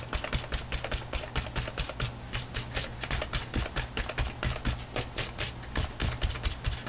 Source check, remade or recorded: recorded